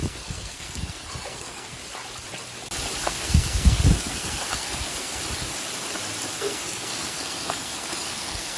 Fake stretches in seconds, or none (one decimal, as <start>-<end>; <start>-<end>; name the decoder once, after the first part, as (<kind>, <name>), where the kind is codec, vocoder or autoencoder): 0.0-1.8 (codec, SNAC); 3.0-5.2; 6.3-8.6